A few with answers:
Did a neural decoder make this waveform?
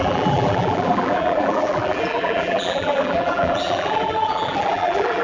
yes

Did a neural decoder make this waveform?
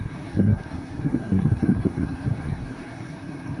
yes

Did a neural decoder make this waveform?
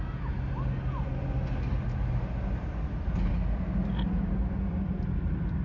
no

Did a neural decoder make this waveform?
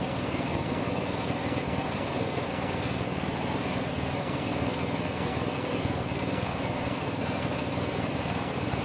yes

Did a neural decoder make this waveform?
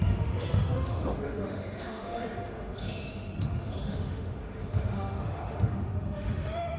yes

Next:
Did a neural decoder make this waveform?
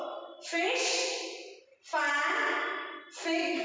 no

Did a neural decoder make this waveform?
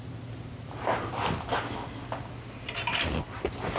no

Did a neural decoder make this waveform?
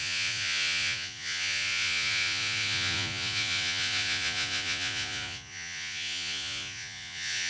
yes